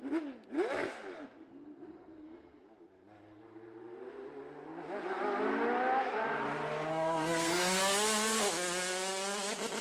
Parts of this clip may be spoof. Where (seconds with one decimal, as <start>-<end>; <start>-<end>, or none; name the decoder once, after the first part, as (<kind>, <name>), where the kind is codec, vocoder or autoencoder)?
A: 1.5-2.6 (codec, SNAC); 6.9-7.8